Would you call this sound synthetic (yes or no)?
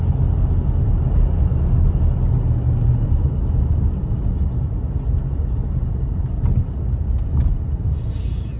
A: no